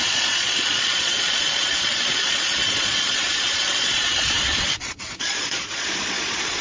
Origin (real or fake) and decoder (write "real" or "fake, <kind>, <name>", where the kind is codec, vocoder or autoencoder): fake, vocoder, Vocos